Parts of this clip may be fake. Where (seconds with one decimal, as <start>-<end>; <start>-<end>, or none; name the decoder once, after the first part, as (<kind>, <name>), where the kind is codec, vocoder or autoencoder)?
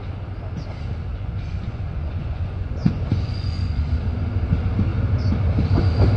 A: 1.1-4.0 (vocoder, Vocos)